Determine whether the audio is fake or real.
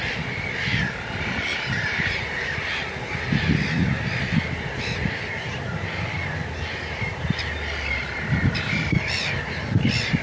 real